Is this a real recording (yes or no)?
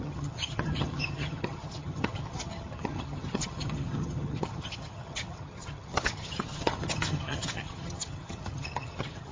no